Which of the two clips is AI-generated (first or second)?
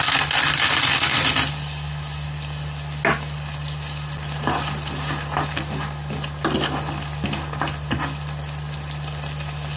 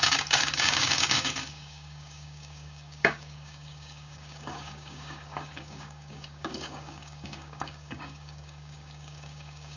second